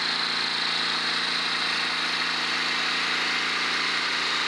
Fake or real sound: real